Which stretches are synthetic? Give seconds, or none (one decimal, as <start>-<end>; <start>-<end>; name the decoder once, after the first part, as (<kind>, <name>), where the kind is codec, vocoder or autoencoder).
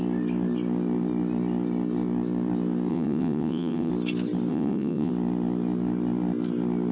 2.9-3.9 (vocoder, WaveNeXt); 4.5-5.1